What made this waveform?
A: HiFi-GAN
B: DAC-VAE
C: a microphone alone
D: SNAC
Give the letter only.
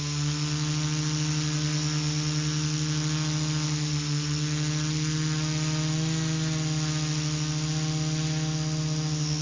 C